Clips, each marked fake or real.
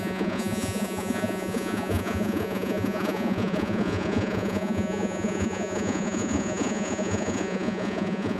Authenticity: fake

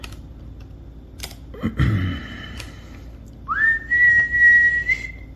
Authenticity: real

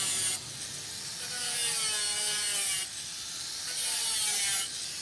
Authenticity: real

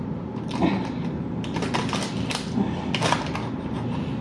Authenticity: real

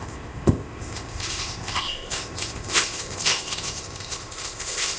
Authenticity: fake